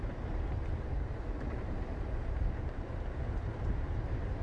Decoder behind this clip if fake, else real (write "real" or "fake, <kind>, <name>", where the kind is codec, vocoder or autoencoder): fake, vocoder, BigVGAN v2